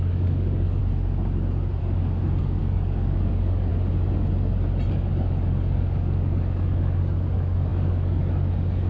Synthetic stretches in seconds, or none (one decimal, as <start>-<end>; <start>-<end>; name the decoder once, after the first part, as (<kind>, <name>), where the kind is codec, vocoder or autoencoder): 0.0-0.8 (codec, DAC); 1.8-3.7; 4.9-8.9